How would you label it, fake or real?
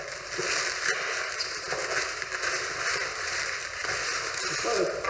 real